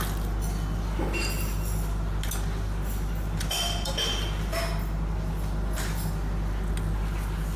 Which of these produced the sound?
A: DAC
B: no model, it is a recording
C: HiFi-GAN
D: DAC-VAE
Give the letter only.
B